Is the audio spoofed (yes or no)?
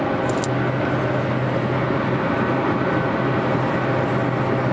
no